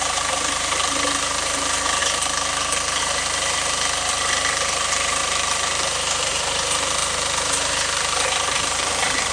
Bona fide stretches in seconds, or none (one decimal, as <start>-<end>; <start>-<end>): 2.0-3.0